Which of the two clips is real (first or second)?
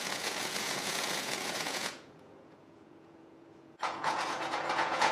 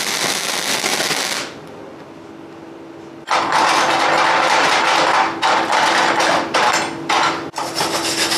second